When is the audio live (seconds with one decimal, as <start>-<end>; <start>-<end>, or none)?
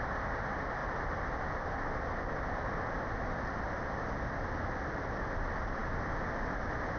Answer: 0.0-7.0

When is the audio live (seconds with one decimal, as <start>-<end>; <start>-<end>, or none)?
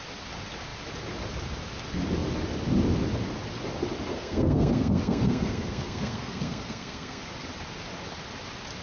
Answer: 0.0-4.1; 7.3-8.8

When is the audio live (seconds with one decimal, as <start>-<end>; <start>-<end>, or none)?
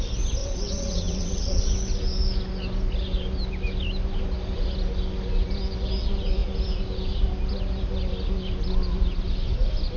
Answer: 0.0-0.4; 1.6-10.0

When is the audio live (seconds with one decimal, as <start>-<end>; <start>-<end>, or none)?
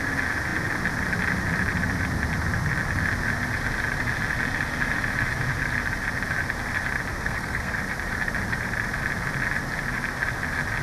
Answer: 0.0-7.1; 7.8-10.8